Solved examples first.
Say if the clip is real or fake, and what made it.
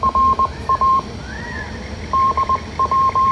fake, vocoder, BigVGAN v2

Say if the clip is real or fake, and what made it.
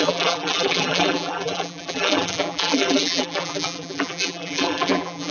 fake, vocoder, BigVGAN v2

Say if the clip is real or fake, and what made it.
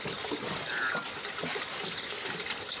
real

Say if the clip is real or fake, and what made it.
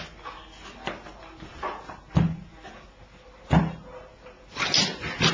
real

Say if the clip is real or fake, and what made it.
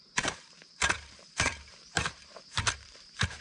fake, vocoder, BigVGAN v2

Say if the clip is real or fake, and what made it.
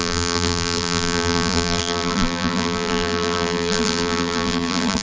fake, vocoder, BigVGAN v2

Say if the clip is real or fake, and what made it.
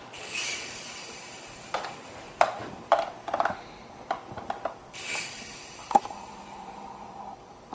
fake, vocoder, BigVGAN v2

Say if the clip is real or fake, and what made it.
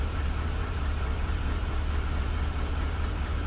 fake, vocoder, BigVGAN v2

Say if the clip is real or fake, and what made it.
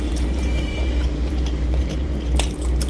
fake, vocoder, BigVGAN v2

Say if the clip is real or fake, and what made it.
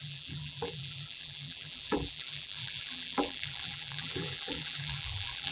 fake, vocoder, BigVGAN v2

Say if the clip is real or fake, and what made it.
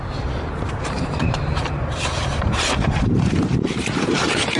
fake, vocoder, BigVGAN v2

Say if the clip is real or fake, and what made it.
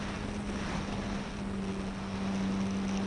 real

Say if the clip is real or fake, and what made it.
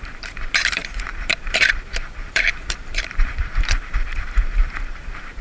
fake, vocoder, BigVGAN v2